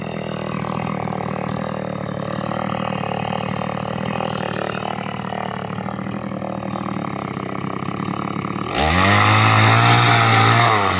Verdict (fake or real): real